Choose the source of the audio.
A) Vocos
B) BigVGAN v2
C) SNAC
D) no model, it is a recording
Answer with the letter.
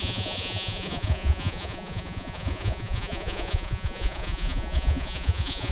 A